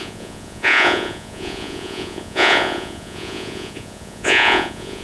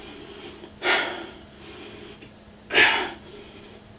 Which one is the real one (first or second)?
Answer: second